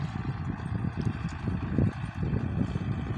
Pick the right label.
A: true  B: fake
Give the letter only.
A